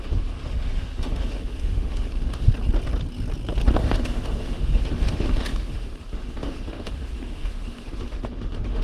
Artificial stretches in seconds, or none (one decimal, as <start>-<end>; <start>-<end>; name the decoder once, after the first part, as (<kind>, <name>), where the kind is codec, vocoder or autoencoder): 0.0-2.5 (autoencoder, DAC-VAE); 3.8-8.8